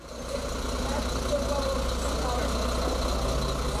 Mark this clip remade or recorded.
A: recorded